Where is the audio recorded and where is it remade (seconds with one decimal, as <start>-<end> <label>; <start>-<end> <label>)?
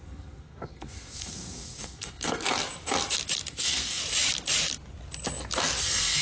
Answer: 0.0-2.5 remade; 2.5-3.5 recorded; 3.5-4.0 remade; 4.0-5.8 recorded; 5.8-6.2 remade